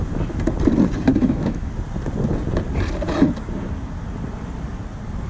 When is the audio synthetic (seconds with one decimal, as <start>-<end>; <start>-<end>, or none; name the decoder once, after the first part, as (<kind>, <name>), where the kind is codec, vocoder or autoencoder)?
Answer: 1.1-1.7 (autoencoder, DAC-VAE)